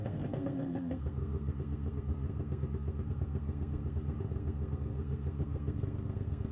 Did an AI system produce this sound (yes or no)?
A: yes